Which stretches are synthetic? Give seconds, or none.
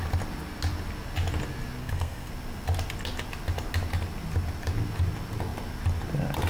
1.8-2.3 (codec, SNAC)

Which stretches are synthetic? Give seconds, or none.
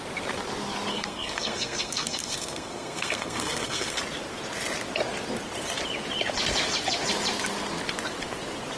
0.9-4.0 (codec, SNAC)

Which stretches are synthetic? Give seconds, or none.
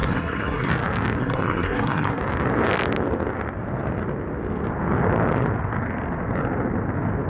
0.0-0.7 (codec, SNAC); 1.2-2.2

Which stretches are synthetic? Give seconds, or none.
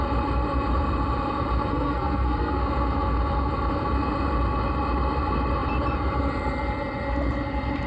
1.7-2.6 (codec, SNAC)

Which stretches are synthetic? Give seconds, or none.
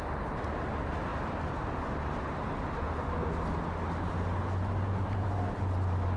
none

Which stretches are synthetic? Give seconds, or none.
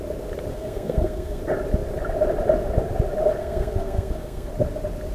0.5-1.4 (codec, SNAC); 3.4-4.5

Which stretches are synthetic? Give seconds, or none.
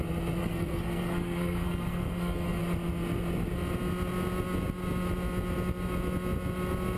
0.4-2.6 (codec, SNAC)